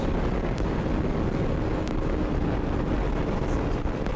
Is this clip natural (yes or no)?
yes